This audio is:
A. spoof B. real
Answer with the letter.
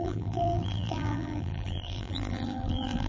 A